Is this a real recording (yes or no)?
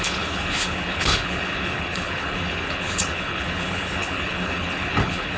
no